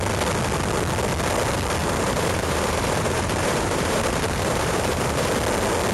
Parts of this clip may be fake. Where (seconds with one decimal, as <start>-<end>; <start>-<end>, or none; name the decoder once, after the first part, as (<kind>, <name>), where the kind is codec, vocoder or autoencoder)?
1.8-5.3 (vocoder, BigVGAN v2)